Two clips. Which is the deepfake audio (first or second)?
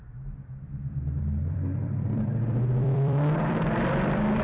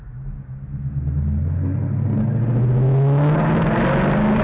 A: first